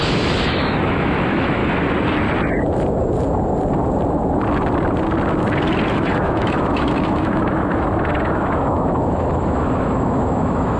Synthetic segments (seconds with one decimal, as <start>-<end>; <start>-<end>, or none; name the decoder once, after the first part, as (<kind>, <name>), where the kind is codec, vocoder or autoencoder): 0.0-1.6 (autoencoder, DAC-VAE); 5.9-10.8